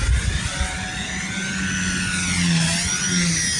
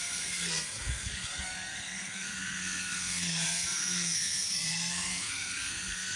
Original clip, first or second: first